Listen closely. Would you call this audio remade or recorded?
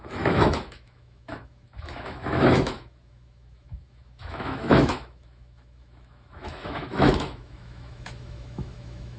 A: remade